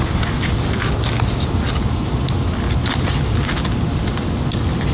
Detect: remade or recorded recorded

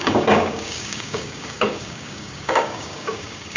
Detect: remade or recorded remade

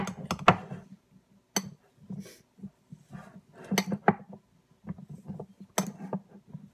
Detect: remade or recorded recorded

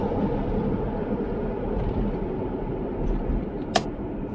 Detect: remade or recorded recorded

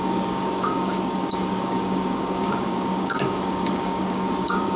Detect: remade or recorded remade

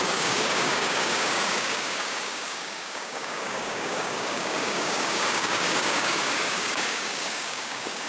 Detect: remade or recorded remade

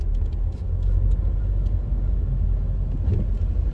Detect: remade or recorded recorded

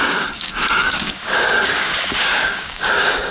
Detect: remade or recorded remade